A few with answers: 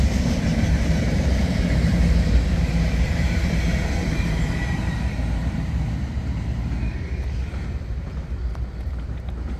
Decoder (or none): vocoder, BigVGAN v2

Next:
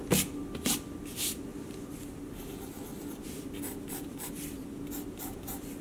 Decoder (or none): none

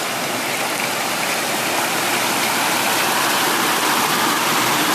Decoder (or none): none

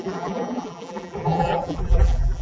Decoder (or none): vocoder, BigVGAN v2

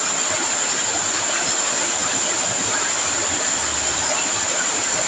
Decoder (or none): none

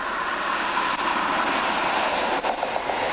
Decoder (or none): vocoder, BigVGAN v2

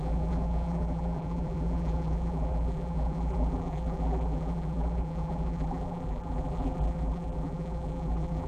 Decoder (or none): vocoder, BigVGAN v2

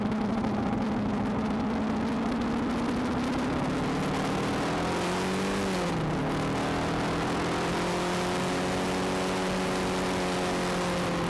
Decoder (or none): none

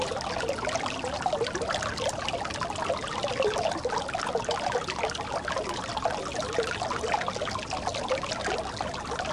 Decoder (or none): none